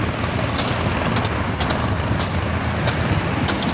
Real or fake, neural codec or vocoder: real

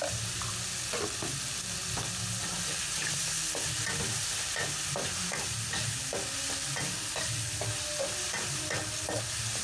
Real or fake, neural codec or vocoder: real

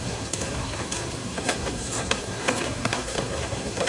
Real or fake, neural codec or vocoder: fake, codec, SNAC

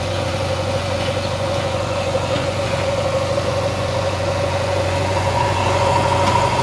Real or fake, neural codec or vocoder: fake, vocoder, Vocos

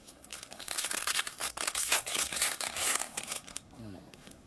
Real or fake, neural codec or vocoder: fake, codec, SNAC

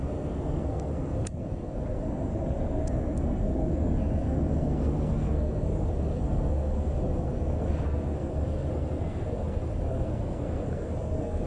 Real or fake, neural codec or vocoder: fake, codec, SNAC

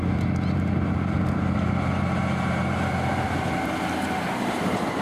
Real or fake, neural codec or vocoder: real